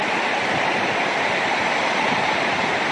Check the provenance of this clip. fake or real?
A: real